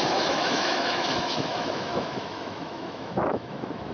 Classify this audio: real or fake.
fake